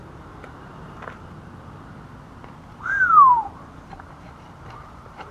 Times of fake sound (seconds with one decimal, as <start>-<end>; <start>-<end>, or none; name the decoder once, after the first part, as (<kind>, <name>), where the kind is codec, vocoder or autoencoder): 0.0-1.5 (vocoder, BigVGAN v2); 3.1-5.3